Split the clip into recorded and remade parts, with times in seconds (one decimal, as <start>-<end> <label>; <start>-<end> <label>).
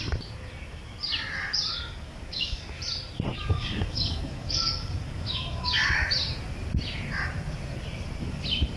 0.0-1.7 recorded; 1.7-2.8 remade; 2.8-3.3 recorded; 3.3-6.1 remade; 6.1-8.8 recorded